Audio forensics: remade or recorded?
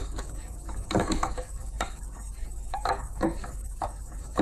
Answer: remade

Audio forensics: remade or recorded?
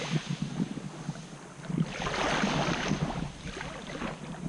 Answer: recorded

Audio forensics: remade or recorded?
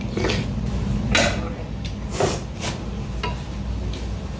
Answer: recorded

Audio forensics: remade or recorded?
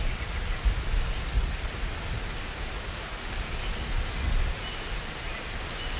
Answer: recorded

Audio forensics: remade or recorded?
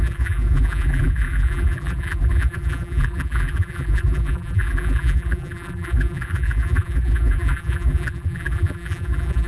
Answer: remade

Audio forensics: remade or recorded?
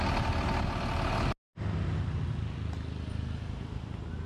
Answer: recorded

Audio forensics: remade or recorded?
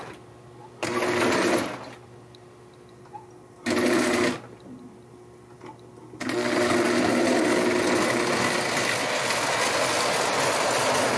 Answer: recorded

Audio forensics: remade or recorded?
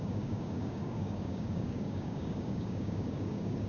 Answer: remade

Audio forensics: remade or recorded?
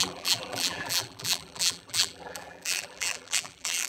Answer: remade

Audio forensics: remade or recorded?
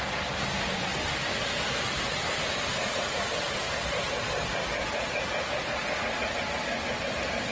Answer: recorded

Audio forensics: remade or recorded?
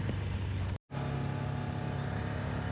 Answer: recorded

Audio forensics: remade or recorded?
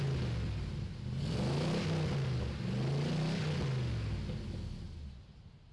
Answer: recorded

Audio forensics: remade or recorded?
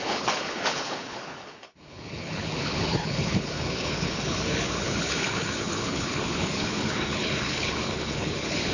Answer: remade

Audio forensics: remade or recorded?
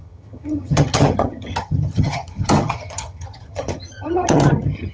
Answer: remade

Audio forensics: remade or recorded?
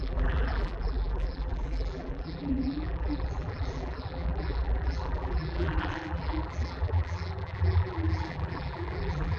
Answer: remade